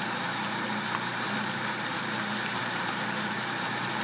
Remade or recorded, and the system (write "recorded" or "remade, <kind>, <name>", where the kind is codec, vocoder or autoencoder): remade, vocoder, BigVGAN v2